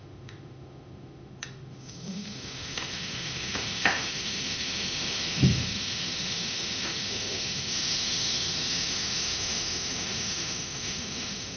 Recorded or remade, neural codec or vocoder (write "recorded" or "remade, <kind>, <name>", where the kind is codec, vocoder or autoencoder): remade, autoencoder, DAC-VAE